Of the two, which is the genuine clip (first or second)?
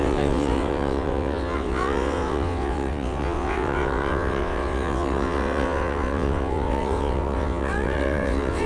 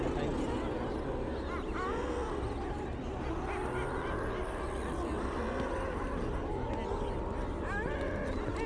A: second